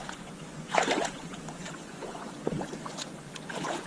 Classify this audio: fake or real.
fake